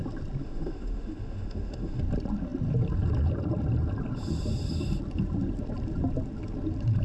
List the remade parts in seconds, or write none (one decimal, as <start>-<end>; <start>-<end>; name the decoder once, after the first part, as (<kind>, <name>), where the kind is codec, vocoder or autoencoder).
0.4-2.0 (autoencoder, DAC-VAE)